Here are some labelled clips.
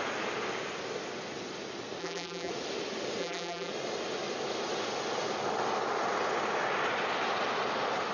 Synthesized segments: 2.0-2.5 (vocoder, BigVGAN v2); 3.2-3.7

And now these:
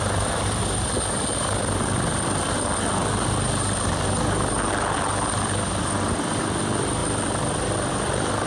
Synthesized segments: 0.0-0.6 (vocoder, BigVGAN v2); 4.7-7.0; 7.9-8.5